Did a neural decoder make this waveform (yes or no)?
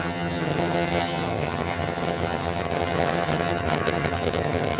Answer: yes